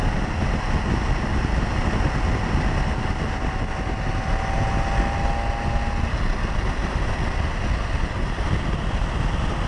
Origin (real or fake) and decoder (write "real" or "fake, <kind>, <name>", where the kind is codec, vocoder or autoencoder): real